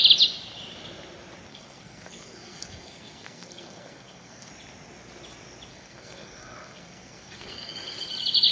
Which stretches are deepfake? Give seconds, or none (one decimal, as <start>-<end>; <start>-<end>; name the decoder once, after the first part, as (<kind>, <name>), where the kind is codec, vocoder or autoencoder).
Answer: 1.5-4.5 (codec, SNAC); 5.7-7.7